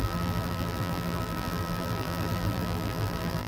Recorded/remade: remade